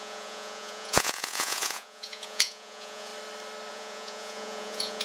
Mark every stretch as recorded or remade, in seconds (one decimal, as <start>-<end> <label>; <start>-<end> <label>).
0.0-3.1 remade; 3.1-3.7 recorded; 3.7-5.0 remade